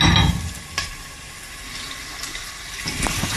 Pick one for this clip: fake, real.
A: real